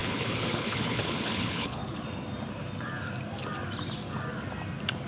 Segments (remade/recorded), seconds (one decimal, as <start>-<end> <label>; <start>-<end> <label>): 0.0-1.8 remade; 1.8-5.1 recorded

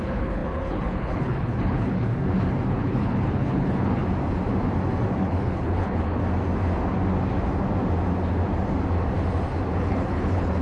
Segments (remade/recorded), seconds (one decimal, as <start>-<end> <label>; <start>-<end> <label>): 0.0-2.1 remade; 2.1-2.7 recorded; 2.7-4.0 remade; 4.0-5.2 recorded; 5.2-6.2 remade; 6.2-9.8 recorded; 9.8-10.6 remade

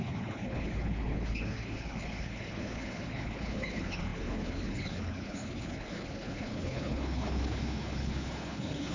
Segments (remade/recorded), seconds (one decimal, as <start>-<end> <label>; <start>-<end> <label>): 0.0-8.9 remade

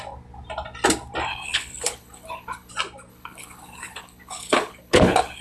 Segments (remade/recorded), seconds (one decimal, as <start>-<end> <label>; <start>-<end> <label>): 0.0-1.3 recorded; 1.3-2.7 remade; 2.7-3.1 recorded; 3.1-5.4 remade

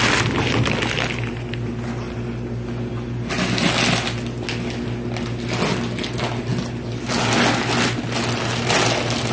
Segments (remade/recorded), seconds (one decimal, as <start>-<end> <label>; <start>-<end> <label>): 0.0-9.3 recorded

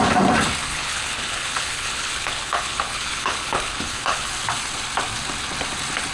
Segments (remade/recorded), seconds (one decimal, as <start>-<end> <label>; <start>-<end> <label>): 0.0-0.6 recorded; 0.6-4.3 remade; 4.3-6.1 recorded

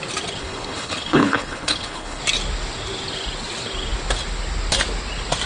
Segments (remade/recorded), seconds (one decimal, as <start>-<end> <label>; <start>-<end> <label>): 0.0-0.4 recorded; 0.4-2.2 remade; 2.2-5.5 recorded

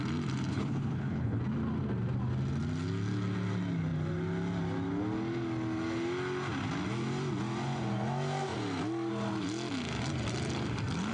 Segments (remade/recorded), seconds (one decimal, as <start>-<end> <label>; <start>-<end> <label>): 0.0-0.5 recorded; 0.5-1.4 remade; 1.4-11.1 recorded